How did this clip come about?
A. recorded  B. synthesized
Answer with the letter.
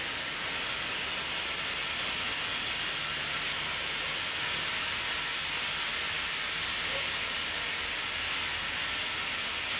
A